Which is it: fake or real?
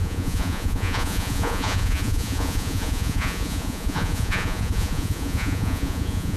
fake